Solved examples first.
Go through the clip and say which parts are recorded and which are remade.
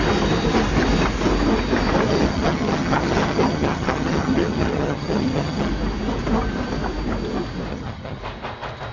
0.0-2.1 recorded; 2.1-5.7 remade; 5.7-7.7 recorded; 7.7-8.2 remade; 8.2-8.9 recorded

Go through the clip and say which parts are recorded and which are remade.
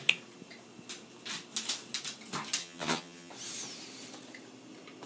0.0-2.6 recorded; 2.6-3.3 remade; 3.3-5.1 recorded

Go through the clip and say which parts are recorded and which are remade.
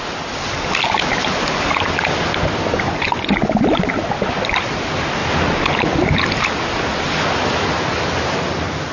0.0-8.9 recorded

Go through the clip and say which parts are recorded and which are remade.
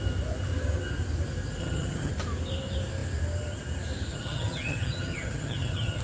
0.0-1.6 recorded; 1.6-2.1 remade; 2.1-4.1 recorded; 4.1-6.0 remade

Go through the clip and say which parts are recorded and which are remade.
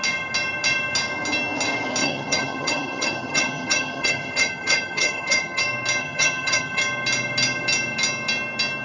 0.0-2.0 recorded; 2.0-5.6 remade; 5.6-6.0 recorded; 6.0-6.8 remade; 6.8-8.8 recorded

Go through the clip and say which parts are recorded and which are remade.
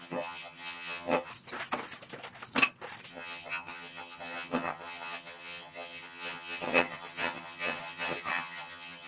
0.0-1.3 remade; 1.3-3.1 recorded; 3.1-9.1 remade